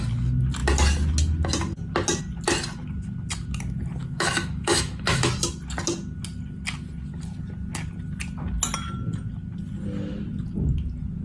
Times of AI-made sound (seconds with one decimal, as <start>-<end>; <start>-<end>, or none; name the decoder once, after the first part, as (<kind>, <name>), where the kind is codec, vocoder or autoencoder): 4.0-5.3 (autoencoder, DAC-VAE)